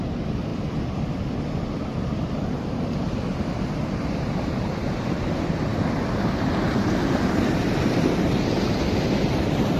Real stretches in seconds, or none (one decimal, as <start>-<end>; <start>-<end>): 0.0-9.8

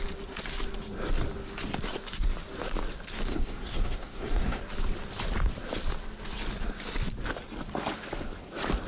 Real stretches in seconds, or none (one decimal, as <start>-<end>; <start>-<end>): 0.0-3.3; 4.6-8.9

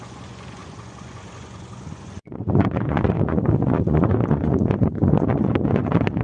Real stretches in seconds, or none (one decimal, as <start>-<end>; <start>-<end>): none

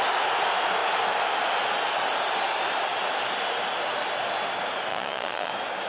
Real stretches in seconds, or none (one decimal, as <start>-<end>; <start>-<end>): 0.0-4.9; 5.5-5.9

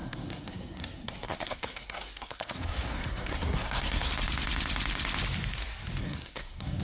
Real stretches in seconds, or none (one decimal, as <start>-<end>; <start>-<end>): 4.1-6.0

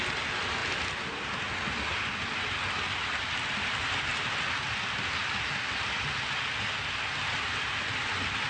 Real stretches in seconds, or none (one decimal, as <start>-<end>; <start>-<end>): 0.0-8.5